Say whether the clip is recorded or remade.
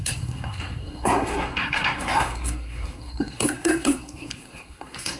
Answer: remade